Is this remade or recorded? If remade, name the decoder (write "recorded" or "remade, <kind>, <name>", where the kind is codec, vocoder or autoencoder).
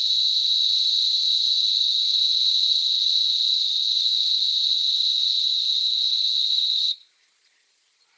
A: remade, vocoder, Vocos